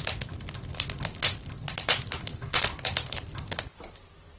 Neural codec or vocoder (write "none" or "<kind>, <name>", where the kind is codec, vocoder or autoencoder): none